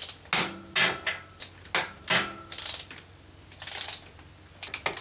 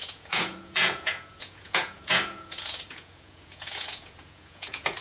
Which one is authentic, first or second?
first